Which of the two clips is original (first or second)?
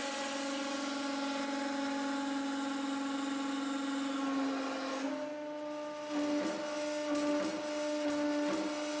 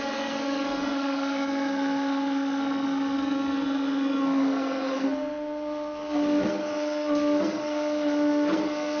first